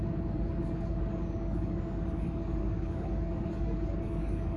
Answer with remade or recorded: remade